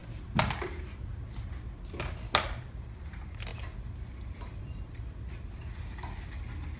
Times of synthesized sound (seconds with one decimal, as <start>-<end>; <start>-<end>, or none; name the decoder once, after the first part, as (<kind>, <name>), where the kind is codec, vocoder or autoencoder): none